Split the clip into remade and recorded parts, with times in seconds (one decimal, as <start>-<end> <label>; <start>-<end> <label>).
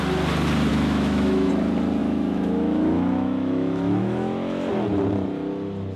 0.0-0.7 recorded; 0.7-1.5 remade; 1.5-2.0 recorded; 2.0-4.7 remade; 4.7-6.0 recorded